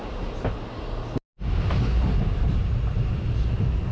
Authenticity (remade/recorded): recorded